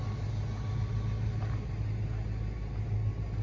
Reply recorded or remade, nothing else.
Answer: recorded